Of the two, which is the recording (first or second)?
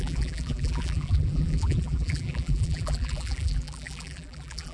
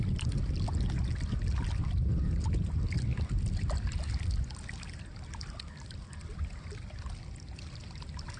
second